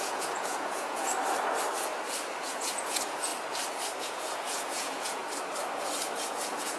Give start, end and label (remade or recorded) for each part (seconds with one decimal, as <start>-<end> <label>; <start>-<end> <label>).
0.0-1.1 remade; 1.1-2.4 recorded; 2.4-3.3 remade; 3.3-4.0 recorded; 4.0-5.2 remade; 5.2-6.3 recorded; 6.3-6.8 remade